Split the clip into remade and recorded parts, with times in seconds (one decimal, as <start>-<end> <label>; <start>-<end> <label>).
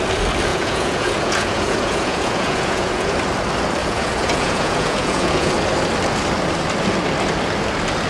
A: 0.0-0.5 recorded; 0.5-3.1 remade; 3.1-3.8 recorded; 3.8-5.5 remade; 5.5-8.1 recorded